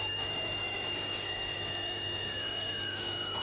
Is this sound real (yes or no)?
no